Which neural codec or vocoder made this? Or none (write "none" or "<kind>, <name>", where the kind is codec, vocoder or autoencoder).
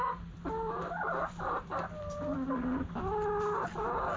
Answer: none